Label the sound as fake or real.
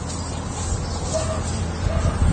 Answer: real